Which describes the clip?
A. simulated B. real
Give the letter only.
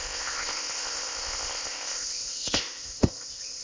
A